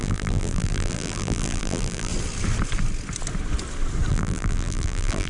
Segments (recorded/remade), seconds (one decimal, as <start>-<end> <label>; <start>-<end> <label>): 0.0-2.1 remade; 2.1-4.1 recorded; 4.1-5.3 remade